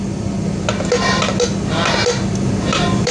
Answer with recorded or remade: recorded